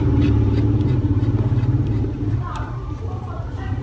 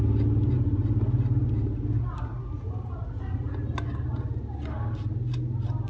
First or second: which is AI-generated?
first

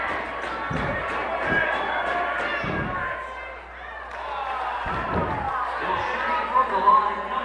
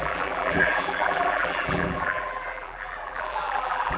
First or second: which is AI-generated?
second